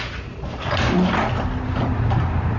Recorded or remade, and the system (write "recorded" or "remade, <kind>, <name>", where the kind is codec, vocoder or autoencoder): recorded